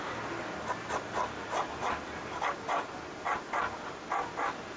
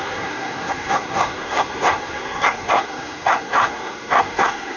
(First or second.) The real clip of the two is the first